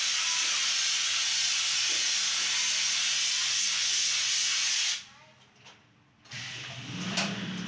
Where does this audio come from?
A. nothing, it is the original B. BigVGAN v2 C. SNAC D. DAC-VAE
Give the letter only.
A